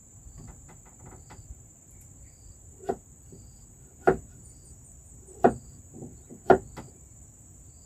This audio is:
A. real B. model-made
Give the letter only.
B